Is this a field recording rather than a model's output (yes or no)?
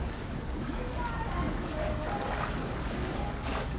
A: no